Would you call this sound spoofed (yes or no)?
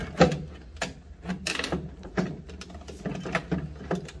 no